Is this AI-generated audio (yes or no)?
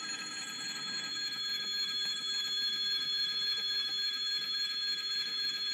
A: yes